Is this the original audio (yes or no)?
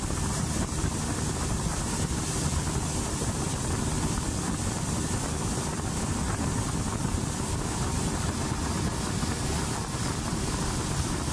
no